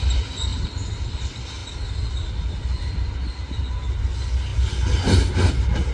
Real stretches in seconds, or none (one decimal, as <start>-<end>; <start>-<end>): 0.0-5.9